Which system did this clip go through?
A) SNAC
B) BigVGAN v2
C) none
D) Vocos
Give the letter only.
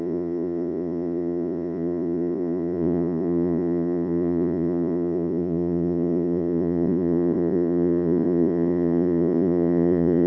D